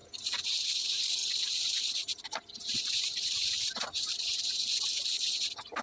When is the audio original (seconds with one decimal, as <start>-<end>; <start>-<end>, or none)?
0.7-1.2; 4.7-5.8